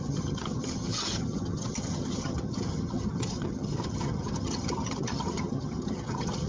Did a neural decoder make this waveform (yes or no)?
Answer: yes